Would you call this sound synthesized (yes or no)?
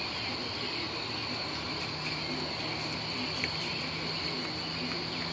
no